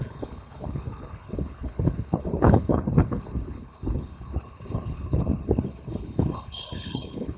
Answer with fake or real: fake